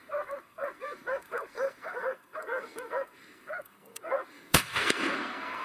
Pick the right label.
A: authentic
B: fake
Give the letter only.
B